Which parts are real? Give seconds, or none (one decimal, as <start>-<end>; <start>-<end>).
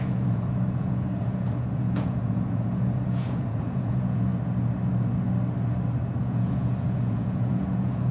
4.3-6.2